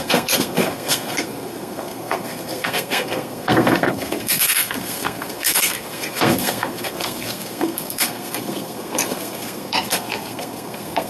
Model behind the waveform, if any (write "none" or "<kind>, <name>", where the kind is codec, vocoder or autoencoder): codec, SNAC